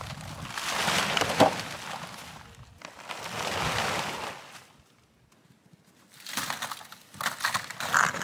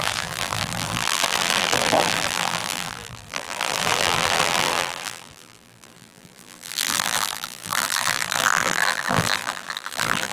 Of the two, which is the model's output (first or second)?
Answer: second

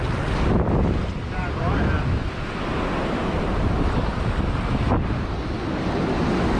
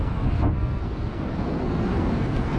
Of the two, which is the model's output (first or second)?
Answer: second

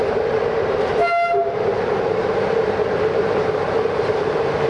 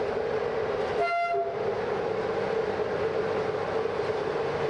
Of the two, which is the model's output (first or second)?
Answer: first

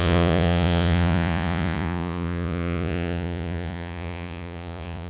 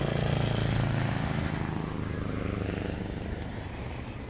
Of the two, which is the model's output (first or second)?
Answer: first